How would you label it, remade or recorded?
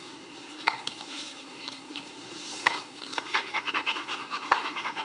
remade